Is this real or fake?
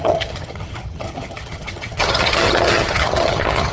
fake